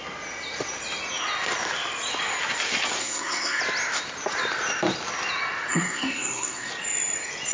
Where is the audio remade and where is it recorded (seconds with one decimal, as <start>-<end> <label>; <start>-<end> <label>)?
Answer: 0.0-3.0 recorded; 3.0-3.6 remade; 3.6-5.7 recorded; 5.7-6.7 remade; 6.7-7.5 recorded